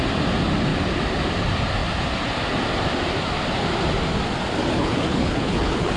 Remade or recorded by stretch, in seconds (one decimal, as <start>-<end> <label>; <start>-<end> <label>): 0.0-4.6 recorded; 4.6-6.0 remade